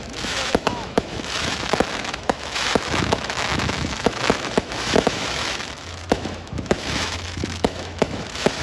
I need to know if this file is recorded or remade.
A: remade